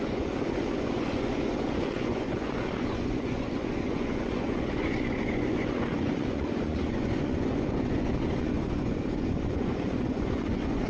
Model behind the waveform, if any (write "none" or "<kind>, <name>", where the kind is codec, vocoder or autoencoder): vocoder, Vocos